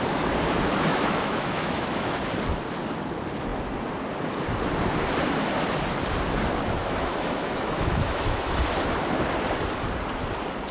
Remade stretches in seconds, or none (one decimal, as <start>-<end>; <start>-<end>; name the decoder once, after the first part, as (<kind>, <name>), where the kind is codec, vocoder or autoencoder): 0.9-2.2 (autoencoder, DAC-VAE); 6.8-8.5